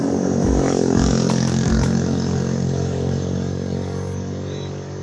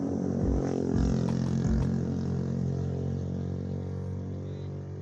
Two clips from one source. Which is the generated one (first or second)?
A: first